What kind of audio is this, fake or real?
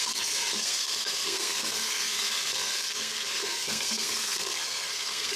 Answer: fake